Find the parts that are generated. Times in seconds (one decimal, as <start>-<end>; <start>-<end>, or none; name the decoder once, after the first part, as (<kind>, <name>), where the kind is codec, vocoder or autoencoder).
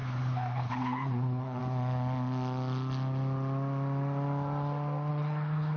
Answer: 0.0-1.6 (codec, HILCodec); 5.1-5.8